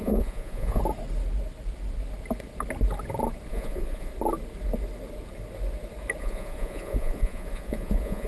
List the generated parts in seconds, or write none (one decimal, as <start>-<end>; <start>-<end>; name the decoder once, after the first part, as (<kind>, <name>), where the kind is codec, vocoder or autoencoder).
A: 0.0-0.8 (vocoder, Vocos); 3.5-4.1; 6.2-8.3